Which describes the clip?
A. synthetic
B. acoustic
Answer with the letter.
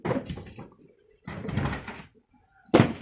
B